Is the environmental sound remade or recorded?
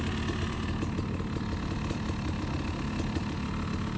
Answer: recorded